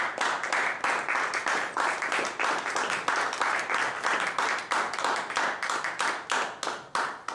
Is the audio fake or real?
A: real